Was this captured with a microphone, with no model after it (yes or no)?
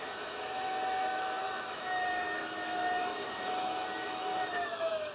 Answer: no